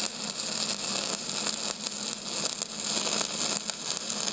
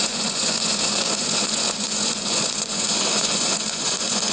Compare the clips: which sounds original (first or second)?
first